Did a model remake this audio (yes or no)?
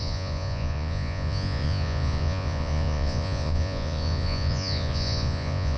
yes